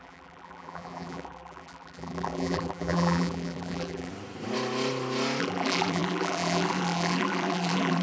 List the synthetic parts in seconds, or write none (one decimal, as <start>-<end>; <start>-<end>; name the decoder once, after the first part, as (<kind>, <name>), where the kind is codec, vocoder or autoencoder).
0.0-4.1 (vocoder, BigVGAN v2); 5.4-8.0